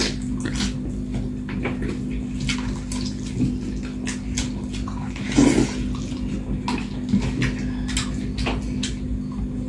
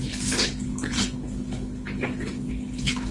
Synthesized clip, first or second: second